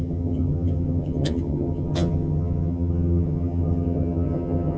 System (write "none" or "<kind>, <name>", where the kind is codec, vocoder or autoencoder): vocoder, HiFi-GAN